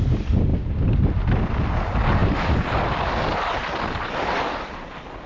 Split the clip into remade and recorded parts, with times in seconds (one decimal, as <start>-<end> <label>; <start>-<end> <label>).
0.0-5.3 recorded